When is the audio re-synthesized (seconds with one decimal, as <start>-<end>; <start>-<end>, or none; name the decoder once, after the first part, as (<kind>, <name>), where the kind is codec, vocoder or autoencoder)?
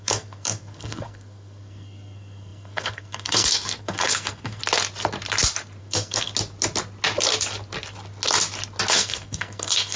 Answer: 0.0-4.6 (codec, SNAC); 5.8-6.3; 8.9-10.0